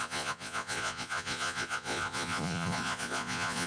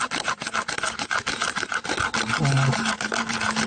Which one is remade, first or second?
first